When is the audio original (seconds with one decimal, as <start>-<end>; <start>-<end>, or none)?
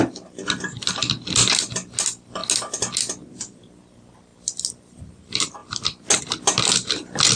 0.0-7.4